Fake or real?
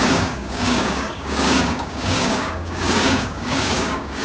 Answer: fake